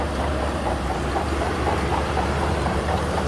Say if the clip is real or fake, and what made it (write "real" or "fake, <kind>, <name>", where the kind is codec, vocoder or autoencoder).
fake, vocoder, BigVGAN v2